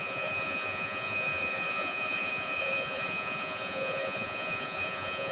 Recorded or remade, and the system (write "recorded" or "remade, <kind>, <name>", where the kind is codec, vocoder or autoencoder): remade, vocoder, Vocos